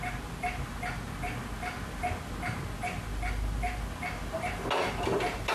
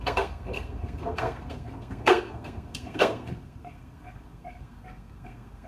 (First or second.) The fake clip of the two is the second